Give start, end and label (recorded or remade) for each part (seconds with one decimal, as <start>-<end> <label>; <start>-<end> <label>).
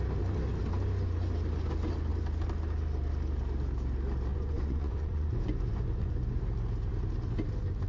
0.0-4.3 recorded; 4.3-6.4 remade; 6.4-7.9 recorded